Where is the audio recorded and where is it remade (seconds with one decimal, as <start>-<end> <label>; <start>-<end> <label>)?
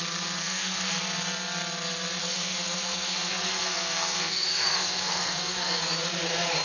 0.0-0.4 recorded; 0.4-1.0 remade; 1.0-2.2 recorded; 2.2-5.8 remade; 5.8-6.6 recorded